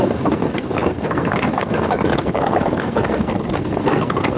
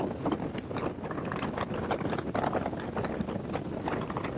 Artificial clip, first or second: first